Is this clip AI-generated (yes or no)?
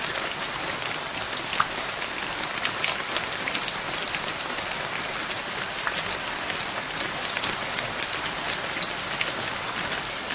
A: no